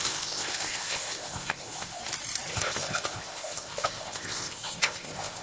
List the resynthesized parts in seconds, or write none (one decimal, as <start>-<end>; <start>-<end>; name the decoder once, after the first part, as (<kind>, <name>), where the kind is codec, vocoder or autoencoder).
0.0-2.0 (codec, ZipCodec); 2.5-5.4